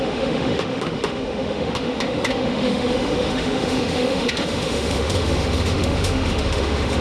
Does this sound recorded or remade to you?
remade